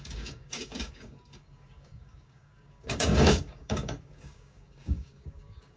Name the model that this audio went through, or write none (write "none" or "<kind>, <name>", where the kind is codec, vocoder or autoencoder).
codec, DAC